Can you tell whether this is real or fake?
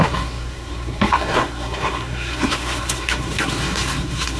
fake